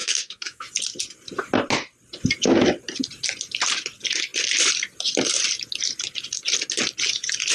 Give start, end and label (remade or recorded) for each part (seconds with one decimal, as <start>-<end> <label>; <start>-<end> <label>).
0.0-0.7 remade; 0.7-7.5 recorded